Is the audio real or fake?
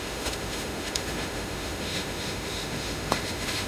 fake